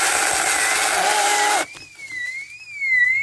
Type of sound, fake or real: real